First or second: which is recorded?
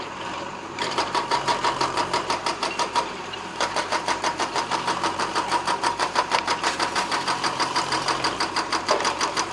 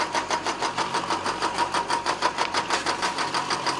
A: second